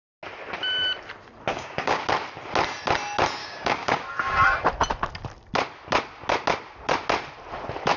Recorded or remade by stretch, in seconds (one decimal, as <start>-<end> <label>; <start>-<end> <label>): 0.0-1.5 recorded; 1.5-2.0 remade; 2.0-3.4 recorded; 3.4-4.0 remade; 4.0-8.0 recorded